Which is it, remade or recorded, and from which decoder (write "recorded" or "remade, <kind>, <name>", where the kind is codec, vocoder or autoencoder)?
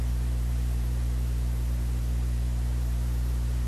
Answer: remade, vocoder, BigVGAN v2